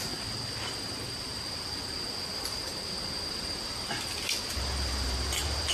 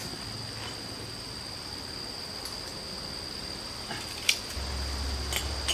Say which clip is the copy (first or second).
first